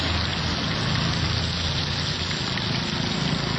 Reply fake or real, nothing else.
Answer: real